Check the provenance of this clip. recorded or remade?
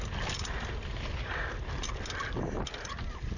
recorded